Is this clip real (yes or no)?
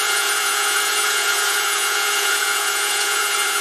no